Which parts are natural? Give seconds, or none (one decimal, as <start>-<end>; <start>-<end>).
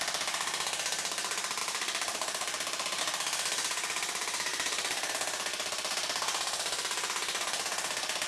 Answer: 0.0-1.6; 3.0-4.5; 5.1-8.3